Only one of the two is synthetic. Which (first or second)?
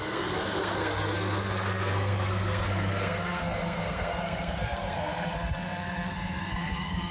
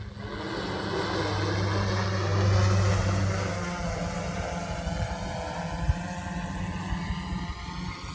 first